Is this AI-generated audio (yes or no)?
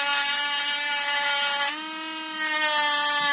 no